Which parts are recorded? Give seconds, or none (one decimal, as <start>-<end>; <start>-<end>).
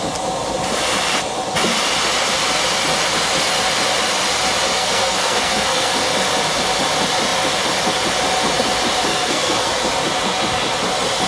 0.0-4.7; 5.9-9.1; 9.7-11.3